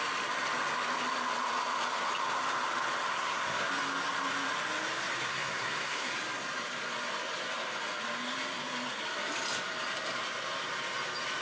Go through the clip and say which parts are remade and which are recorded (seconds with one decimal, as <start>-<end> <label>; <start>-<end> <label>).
0.0-3.1 recorded; 3.1-3.7 remade; 3.7-5.3 recorded; 5.3-6.1 remade; 6.1-11.4 recorded

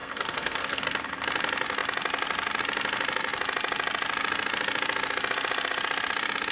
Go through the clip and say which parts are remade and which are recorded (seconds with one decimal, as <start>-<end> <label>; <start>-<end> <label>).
0.0-0.8 remade; 0.8-6.5 recorded

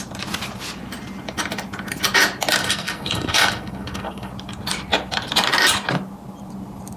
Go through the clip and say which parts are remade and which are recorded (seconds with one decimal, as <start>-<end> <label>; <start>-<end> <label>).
0.0-2.6 recorded; 2.6-4.3 remade; 4.3-7.0 recorded

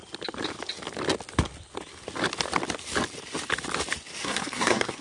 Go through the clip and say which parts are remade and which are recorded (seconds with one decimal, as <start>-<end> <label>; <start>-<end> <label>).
0.0-4.2 recorded; 4.2-5.0 remade